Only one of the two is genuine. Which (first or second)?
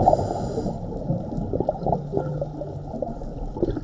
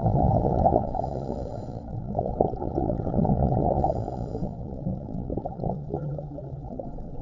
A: first